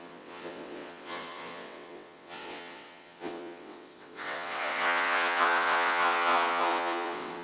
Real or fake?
fake